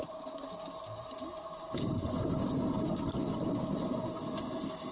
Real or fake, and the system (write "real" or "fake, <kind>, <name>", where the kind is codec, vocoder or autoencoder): real